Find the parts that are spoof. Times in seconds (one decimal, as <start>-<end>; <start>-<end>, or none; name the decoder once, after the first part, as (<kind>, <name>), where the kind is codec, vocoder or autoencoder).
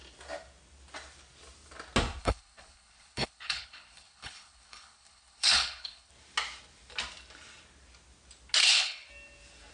2.2-6.1 (codec, HILCodec); 8.6-9.1